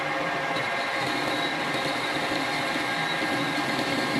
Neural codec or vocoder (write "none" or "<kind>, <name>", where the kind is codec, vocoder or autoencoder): none